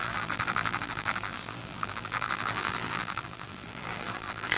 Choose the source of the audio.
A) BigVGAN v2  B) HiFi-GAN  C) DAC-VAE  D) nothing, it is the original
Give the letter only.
A